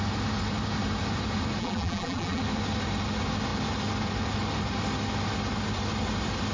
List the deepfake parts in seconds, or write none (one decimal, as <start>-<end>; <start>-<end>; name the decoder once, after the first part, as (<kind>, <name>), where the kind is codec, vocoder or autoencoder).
1.6-2.4 (vocoder, BigVGAN v2)